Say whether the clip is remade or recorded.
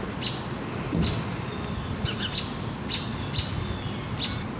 recorded